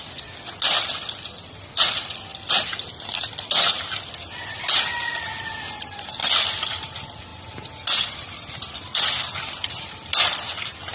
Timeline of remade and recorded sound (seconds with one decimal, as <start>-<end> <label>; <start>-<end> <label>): 0.0-10.9 recorded